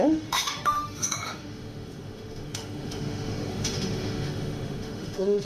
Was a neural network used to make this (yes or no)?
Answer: yes